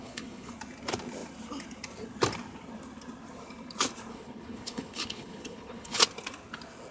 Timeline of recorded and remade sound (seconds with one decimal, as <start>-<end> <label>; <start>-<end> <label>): 0.0-0.5 remade; 0.5-4.1 recorded; 4.1-6.0 remade; 6.0-6.9 recorded